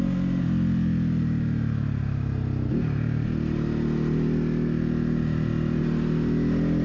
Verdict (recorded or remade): recorded